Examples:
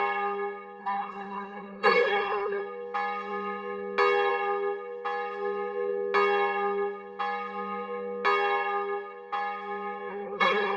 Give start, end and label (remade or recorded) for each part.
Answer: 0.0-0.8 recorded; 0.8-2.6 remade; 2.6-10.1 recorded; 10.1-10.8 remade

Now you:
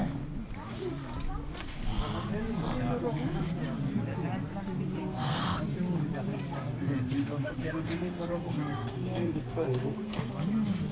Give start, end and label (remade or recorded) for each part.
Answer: 0.0-5.0 recorded; 5.0-5.6 remade; 5.6-7.2 recorded; 7.2-10.3 remade; 10.3-10.9 recorded

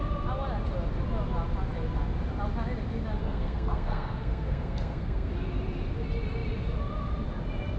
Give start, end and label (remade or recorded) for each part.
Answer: 0.0-3.2 recorded; 3.2-5.3 remade; 5.3-7.8 recorded

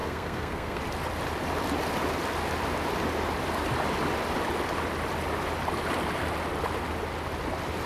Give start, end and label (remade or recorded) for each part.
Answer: 0.0-0.8 remade; 0.8-7.9 recorded

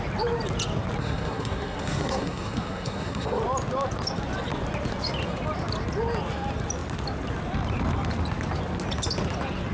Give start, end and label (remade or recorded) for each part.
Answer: 0.0-1.0 recorded; 1.0-3.4 remade; 3.4-9.7 recorded